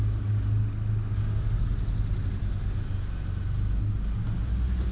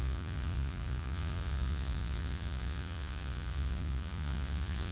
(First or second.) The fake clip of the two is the second